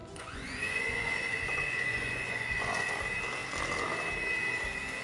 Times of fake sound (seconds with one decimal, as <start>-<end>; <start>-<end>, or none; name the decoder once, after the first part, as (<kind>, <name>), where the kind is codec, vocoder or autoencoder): 0.0-2.9 (vocoder, Vocos)